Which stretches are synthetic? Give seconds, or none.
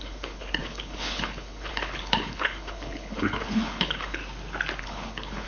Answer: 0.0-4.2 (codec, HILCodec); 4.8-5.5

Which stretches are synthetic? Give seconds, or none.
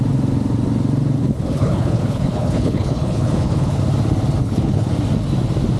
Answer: 1.2-3.8 (codec, HILCodec); 4.4-4.9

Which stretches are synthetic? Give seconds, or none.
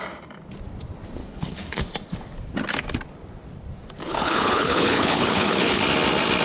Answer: 1.2-1.8 (codec, HILCodec); 4.0-5.8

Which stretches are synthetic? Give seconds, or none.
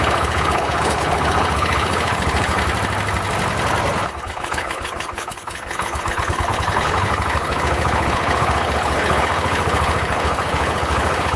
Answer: 0.0-2.6 (codec, HILCodec); 4.2-11.4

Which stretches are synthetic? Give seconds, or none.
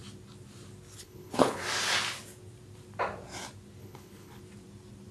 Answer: 1.0-1.6 (codec, HILCodec); 3.8-4.4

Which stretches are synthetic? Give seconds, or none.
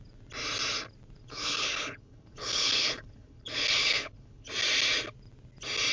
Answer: 1.2-4.5 (codec, HILCodec)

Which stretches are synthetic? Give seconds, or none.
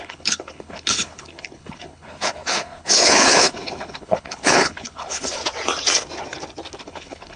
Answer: 0.0-5.4 (codec, HILCodec); 6.8-7.4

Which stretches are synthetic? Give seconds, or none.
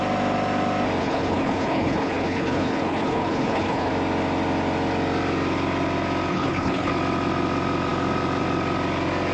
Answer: 1.0-3.9 (codec, HILCodec); 6.3-6.9